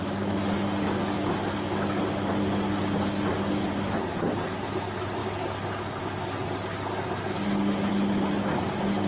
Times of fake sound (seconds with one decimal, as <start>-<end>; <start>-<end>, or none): 0.0-5.2; 7.9-9.1